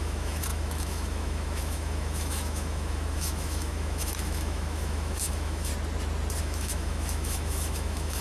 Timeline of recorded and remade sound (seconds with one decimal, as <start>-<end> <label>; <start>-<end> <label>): 0.0-5.7 remade; 5.7-6.4 recorded; 6.4-8.2 remade